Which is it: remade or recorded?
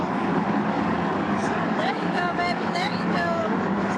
remade